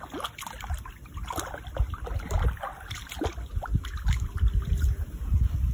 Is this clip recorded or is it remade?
recorded